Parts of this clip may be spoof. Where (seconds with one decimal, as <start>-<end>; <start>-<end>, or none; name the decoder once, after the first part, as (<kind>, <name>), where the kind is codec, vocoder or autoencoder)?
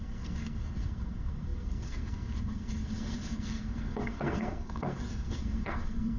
0.0-6.2 (codec, SNAC)